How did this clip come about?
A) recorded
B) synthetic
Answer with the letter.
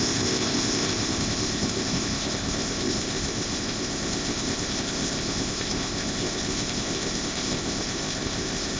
B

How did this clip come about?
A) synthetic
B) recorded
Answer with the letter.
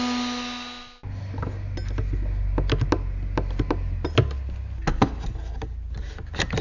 B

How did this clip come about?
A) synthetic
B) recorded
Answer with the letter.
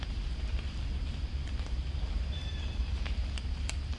A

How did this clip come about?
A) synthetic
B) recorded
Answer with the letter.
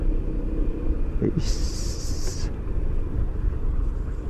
B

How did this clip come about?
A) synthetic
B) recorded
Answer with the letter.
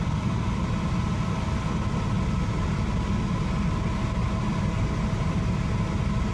B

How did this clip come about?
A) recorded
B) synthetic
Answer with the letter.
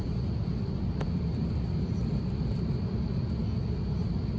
A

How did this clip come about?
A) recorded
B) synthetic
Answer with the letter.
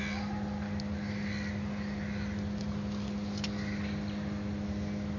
A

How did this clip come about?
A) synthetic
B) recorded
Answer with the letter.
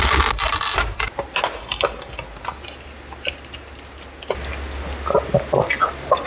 B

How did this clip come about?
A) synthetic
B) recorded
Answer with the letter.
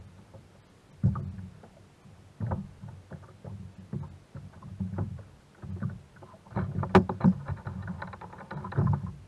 B